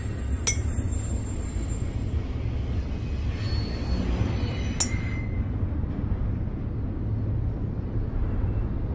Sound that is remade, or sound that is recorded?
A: recorded